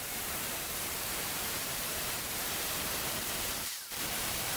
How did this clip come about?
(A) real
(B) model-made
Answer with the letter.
B